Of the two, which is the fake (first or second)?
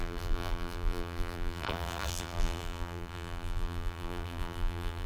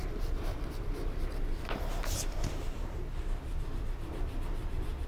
first